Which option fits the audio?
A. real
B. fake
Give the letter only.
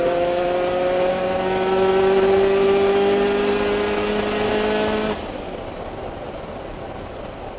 A